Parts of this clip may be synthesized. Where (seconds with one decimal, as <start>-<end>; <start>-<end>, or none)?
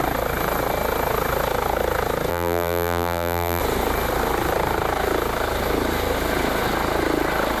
2.3-3.6